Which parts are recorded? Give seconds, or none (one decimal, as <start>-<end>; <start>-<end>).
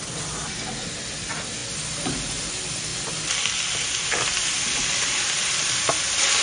0.0-6.4